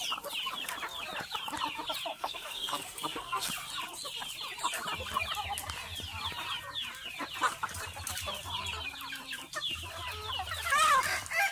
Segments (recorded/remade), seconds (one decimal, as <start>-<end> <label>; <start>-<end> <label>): 0.0-2.1 recorded; 2.1-3.5 remade; 3.5-11.5 recorded